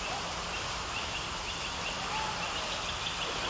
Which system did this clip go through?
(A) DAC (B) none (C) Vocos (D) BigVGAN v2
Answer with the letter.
B